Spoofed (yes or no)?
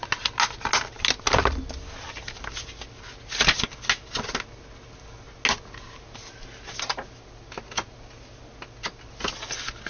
no